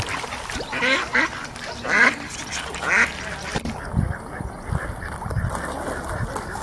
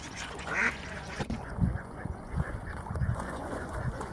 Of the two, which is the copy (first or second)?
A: second